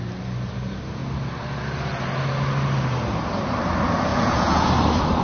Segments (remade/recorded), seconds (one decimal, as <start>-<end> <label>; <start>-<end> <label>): 0.0-4.1 recorded; 4.1-4.7 remade; 4.7-5.2 recorded